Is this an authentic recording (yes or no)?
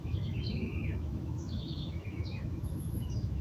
no